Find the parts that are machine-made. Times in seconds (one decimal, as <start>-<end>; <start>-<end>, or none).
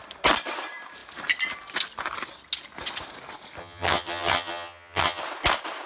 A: 3.6-5.2